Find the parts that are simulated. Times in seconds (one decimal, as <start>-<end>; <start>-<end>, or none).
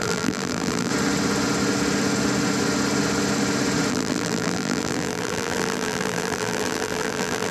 0.0-0.9; 3.9-7.5